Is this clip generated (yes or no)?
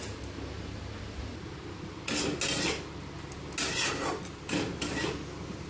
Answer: no